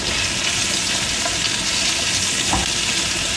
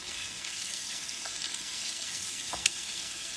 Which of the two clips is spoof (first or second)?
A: second